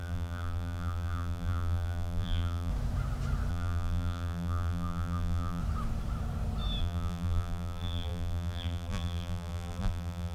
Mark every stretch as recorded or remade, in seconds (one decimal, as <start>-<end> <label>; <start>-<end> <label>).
0.0-2.7 remade; 2.7-3.5 recorded; 3.5-5.6 remade; 5.6-6.8 recorded; 6.8-10.3 remade